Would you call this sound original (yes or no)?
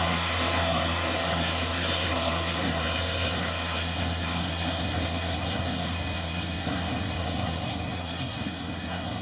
no